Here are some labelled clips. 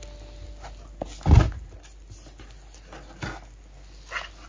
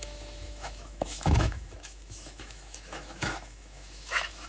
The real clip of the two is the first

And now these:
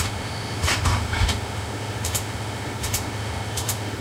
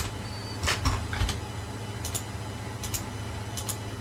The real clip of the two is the second